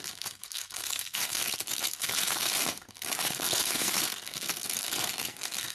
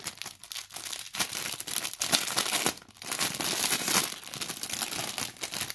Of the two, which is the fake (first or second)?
first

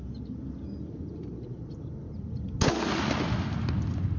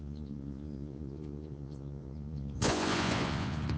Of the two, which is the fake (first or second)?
second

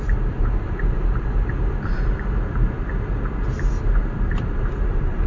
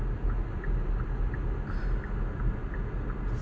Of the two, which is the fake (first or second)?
first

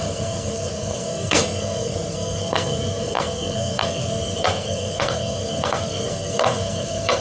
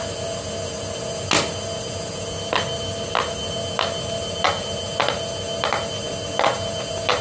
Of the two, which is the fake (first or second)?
first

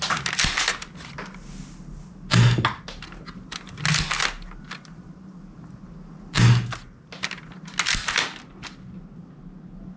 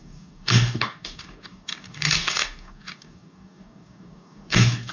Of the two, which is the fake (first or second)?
second